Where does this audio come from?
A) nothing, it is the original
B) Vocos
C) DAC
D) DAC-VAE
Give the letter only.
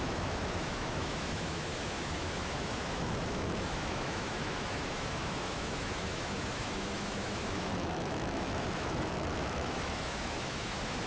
D